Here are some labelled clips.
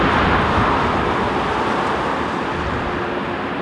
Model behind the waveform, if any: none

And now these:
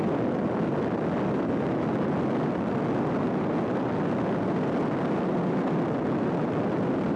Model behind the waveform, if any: none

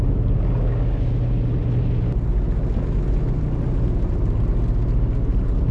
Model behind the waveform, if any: none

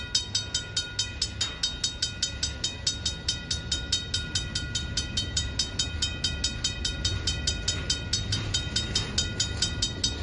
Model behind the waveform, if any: none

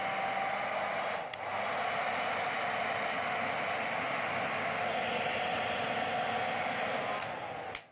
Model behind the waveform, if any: none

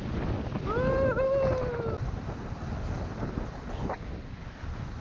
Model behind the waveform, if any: none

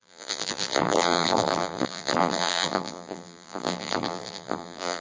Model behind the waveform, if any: vocoder, BigVGAN v2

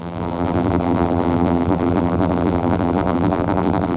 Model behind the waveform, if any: vocoder, BigVGAN v2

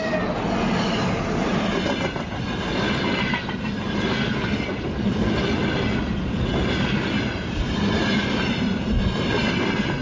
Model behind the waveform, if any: none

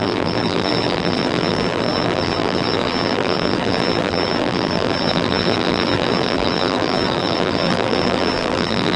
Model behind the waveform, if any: vocoder, BigVGAN v2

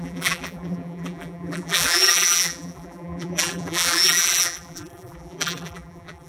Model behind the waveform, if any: vocoder, BigVGAN v2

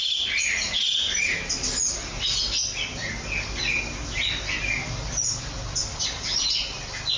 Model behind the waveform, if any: none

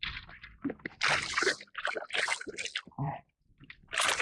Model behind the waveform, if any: vocoder, BigVGAN v2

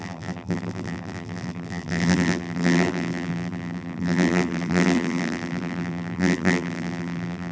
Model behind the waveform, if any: vocoder, BigVGAN v2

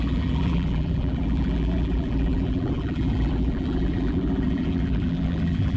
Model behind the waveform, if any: vocoder, BigVGAN v2